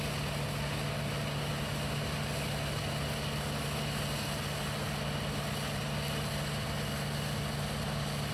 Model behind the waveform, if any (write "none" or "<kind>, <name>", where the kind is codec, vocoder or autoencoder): none